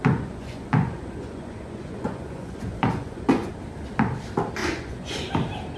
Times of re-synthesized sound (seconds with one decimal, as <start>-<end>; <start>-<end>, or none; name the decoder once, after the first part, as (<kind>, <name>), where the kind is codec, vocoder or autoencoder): 0.0-3.5 (vocoder, Vocos); 4.6-5.3